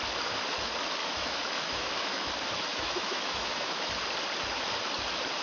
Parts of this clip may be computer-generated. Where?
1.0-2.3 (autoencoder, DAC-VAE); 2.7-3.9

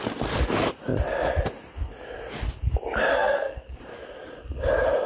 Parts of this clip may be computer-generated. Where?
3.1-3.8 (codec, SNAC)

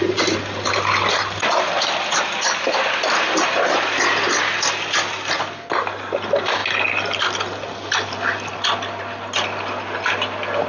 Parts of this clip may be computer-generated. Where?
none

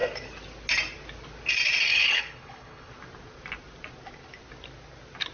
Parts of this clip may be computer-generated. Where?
1.9-2.9 (codec, HILCodec)

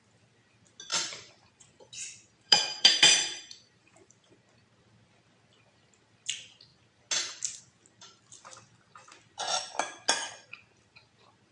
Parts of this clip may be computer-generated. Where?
0.9-4.3 (vocoder, BigVGAN v2)

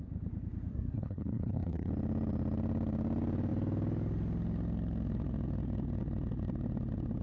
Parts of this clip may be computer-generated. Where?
0.7-1.9 (codec, SNAC)